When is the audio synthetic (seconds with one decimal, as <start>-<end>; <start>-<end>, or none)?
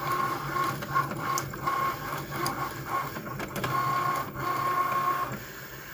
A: none